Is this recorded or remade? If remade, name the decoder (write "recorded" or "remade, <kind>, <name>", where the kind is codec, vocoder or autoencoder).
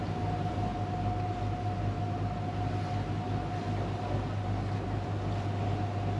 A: recorded